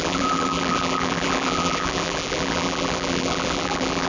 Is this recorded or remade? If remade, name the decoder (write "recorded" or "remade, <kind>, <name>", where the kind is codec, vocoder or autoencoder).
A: remade, vocoder, BigVGAN v2